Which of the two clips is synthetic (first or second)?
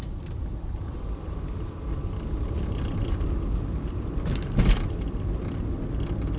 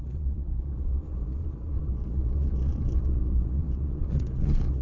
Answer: second